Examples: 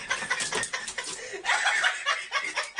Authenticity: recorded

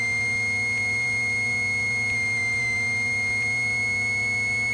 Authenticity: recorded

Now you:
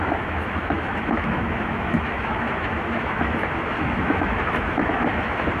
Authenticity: remade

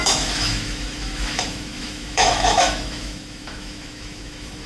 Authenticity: remade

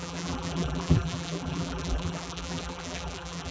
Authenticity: remade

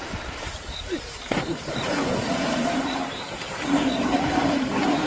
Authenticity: remade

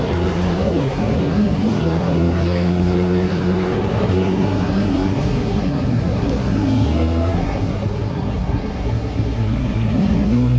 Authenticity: remade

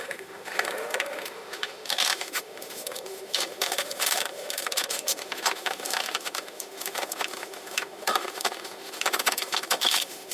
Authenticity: remade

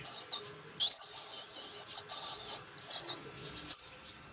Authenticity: recorded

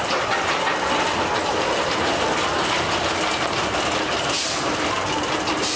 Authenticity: recorded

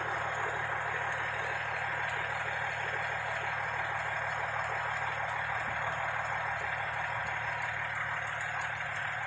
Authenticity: recorded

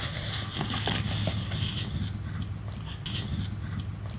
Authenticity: recorded